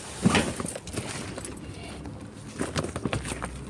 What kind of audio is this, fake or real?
real